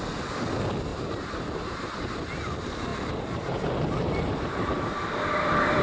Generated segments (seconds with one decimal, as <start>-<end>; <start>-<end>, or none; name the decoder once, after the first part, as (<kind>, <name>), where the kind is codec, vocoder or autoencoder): 0.9-2.0 (vocoder, BigVGAN v2); 2.9-5.8